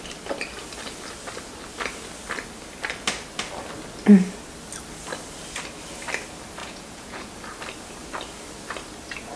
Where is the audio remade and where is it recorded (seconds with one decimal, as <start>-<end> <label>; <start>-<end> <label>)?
0.0-6.6 recorded; 6.6-7.3 remade; 7.3-9.4 recorded